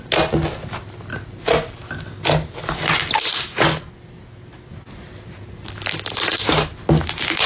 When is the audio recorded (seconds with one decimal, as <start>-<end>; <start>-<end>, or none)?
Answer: 0.0-7.5